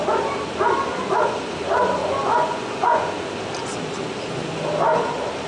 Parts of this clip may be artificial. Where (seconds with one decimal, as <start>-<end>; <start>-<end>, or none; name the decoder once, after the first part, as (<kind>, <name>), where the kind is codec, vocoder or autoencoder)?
2.0-3.3 (vocoder, Vocos)